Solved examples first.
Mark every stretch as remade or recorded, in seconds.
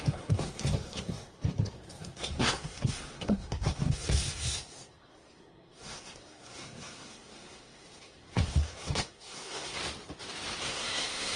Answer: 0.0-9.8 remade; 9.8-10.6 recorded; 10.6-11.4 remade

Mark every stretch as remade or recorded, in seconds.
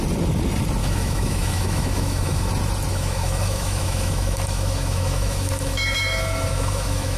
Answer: 0.0-0.8 recorded; 0.8-2.5 remade; 2.5-2.9 recorded; 2.9-7.2 remade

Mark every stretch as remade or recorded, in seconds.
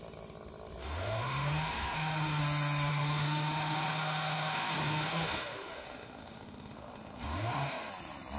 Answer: 0.0-0.8 recorded; 0.8-2.4 remade; 2.4-2.9 recorded; 2.9-7.9 remade; 7.9-8.4 recorded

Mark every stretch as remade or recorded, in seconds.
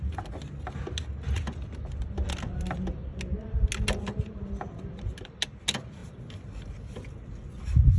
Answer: 0.0-8.0 recorded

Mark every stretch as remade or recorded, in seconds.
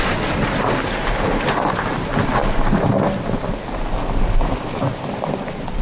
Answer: 0.0-5.8 recorded